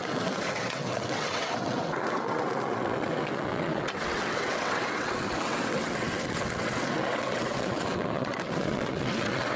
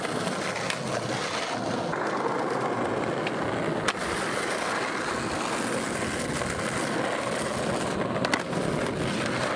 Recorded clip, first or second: second